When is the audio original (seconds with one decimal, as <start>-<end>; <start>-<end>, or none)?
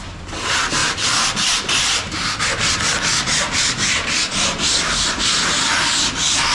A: 0.0-0.8; 2.4-3.1; 5.2-6.5